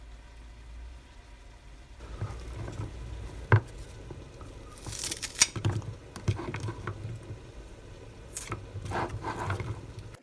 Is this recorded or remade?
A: recorded